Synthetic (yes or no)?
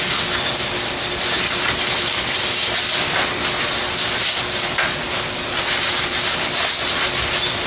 no